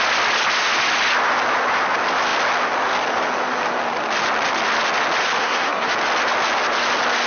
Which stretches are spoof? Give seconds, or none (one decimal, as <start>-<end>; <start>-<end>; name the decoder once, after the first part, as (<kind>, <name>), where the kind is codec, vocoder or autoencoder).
5.4-5.9 (codec, SNAC)